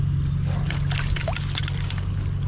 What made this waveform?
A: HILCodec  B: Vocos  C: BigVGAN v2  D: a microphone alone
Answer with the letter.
D